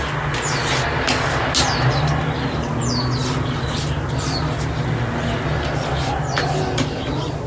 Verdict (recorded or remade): recorded